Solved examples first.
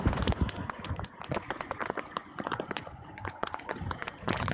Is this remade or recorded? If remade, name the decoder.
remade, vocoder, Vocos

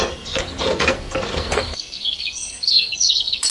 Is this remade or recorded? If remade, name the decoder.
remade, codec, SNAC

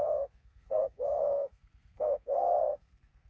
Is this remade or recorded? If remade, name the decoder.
remade, codec, SNAC